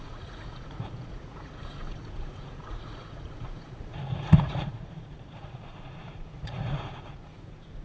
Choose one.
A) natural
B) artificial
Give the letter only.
B